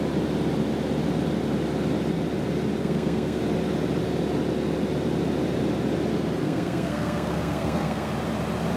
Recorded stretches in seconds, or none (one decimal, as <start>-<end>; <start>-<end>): 0.0-2.8; 3.4-6.4; 8.1-8.8